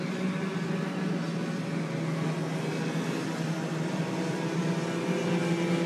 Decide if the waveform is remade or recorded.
recorded